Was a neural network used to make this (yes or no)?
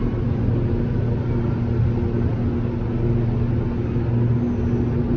no